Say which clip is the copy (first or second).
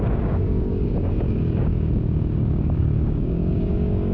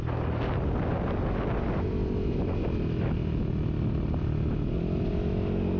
first